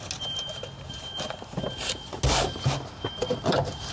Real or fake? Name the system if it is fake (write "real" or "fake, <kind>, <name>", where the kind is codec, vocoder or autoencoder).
real